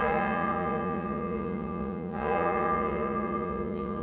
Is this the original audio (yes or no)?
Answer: no